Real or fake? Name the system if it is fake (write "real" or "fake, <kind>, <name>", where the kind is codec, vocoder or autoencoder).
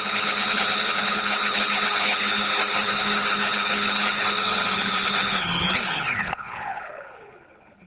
fake, codec, HILCodec